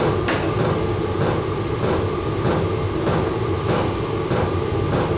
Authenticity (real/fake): real